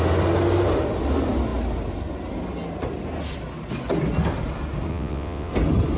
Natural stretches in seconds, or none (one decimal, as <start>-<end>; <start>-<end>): 0.0-4.9; 5.5-6.0